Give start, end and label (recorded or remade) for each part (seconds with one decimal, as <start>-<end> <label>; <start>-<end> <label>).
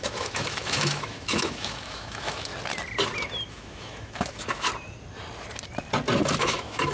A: 0.0-2.5 remade; 2.5-3.5 recorded; 3.5-4.7 remade; 4.7-6.4 recorded; 6.4-6.9 remade